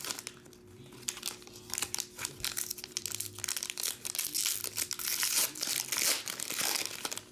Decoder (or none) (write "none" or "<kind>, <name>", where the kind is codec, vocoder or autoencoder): none